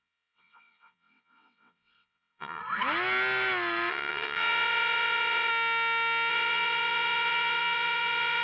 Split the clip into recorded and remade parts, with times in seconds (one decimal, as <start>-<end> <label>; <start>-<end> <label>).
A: 0.0-2.6 remade; 2.6-3.9 recorded; 3.9-5.5 remade; 5.5-6.3 recorded; 6.3-8.4 remade